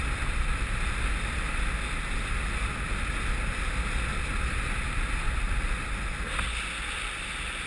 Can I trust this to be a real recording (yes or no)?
yes